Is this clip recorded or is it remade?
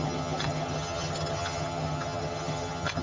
remade